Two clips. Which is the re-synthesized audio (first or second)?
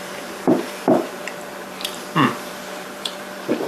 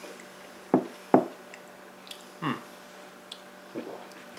first